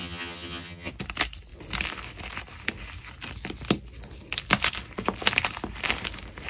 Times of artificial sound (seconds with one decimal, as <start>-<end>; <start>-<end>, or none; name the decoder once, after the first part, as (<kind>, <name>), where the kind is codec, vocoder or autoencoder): 0.0-0.9 (vocoder, HiFi-GAN)